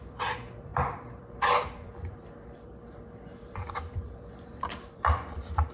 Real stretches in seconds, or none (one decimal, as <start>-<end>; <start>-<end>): none